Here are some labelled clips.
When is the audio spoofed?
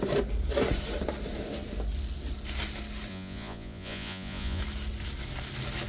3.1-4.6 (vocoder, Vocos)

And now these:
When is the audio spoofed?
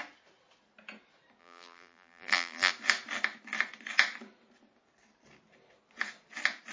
1.4-2.7 (vocoder, BigVGAN v2)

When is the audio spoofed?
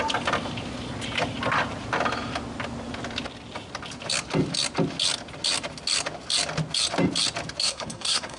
7.6-8.4 (codec, SNAC)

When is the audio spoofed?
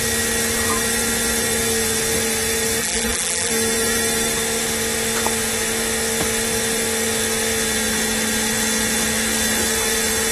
2.8-3.5 (vocoder, BigVGAN v2)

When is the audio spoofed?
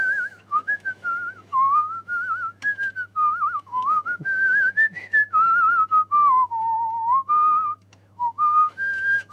0.0-9.3 (autoencoder, DAC-VAE)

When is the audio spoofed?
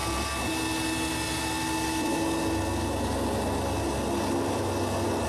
none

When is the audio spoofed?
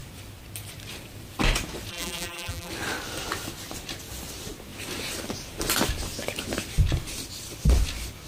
1.9-2.7 (vocoder, BigVGAN v2)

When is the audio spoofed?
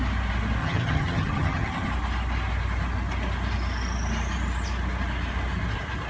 0.6-1.9 (vocoder, HiFi-GAN)